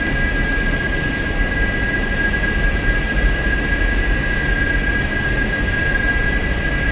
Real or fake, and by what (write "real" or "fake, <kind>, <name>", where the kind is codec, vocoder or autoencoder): real